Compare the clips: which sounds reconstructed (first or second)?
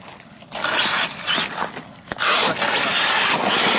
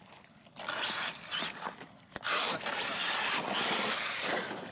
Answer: second